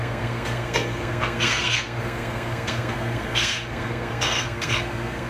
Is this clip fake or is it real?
fake